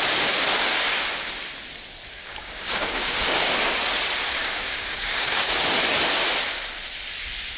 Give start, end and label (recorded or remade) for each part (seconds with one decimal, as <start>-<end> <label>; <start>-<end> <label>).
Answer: 0.0-2.2 recorded; 2.2-3.2 remade; 3.2-4.4 recorded; 4.4-5.6 remade; 5.6-7.6 recorded